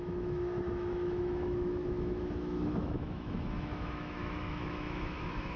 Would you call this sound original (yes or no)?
no